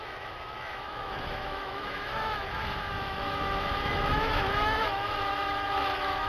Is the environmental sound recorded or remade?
remade